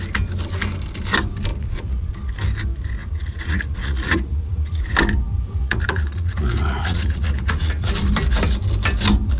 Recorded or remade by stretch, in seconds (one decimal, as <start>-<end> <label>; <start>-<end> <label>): 0.0-1.5 recorded; 1.5-2.1 remade; 2.1-3.0 recorded; 3.0-4.8 remade; 4.8-5.6 recorded; 5.6-7.9 remade; 7.9-9.4 recorded